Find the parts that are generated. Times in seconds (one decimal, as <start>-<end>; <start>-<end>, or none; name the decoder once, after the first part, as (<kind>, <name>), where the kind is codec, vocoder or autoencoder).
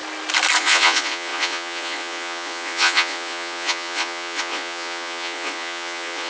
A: 0.6-6.3 (vocoder, Vocos)